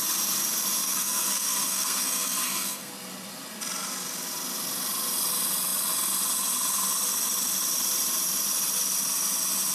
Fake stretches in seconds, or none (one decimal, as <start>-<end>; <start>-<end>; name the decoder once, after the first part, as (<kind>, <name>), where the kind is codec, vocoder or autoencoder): 0.8-2.9 (codec, SNAC)